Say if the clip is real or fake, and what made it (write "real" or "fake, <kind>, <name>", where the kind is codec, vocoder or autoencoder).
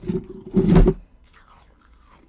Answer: real